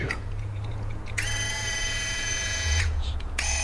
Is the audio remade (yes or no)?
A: yes